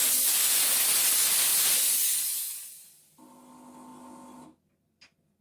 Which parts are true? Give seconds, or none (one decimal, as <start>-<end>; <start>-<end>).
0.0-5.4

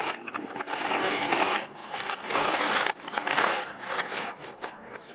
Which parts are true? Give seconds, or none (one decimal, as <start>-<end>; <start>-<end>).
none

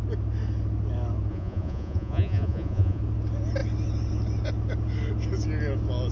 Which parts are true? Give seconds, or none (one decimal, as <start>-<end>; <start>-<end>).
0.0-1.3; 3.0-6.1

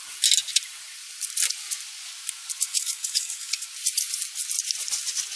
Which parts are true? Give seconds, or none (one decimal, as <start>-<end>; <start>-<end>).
0.0-2.7; 3.6-5.4

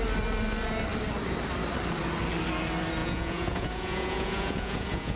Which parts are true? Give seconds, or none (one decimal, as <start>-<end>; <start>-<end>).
0.0-3.0